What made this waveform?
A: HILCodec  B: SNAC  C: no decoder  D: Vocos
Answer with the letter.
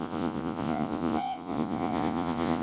D